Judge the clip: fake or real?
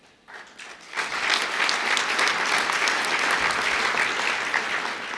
real